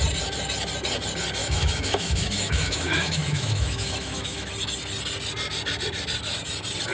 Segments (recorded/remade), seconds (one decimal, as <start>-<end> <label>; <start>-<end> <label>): 0.0-1.4 recorded; 1.4-4.5 remade; 4.5-6.9 recorded